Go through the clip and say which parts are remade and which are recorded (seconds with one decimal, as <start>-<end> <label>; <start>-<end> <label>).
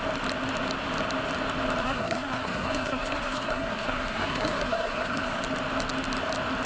0.0-1.8 recorded; 1.8-5.4 remade; 5.4-6.7 recorded